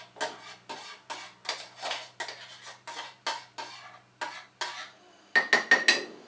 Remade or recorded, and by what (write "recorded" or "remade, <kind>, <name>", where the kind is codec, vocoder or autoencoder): recorded